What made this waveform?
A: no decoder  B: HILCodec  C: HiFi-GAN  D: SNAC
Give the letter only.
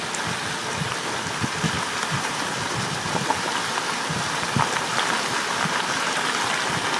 A